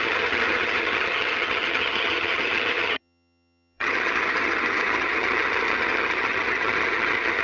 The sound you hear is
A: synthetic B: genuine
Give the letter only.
A